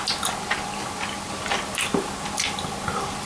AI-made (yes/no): no